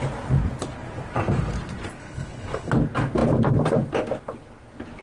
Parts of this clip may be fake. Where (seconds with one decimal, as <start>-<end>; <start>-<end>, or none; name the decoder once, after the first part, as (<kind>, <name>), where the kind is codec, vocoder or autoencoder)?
2.0-2.7 (codec, HILCodec)